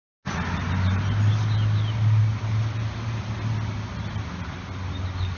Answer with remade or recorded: recorded